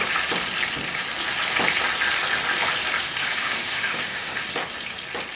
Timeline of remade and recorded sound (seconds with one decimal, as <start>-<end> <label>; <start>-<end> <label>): 0.0-3.2 recorded; 3.2-4.4 remade; 4.4-5.4 recorded